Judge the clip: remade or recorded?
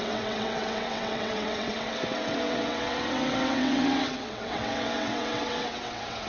remade